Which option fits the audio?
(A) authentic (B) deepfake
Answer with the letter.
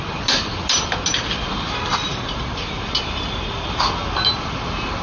A